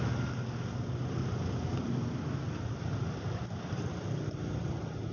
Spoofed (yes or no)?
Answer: no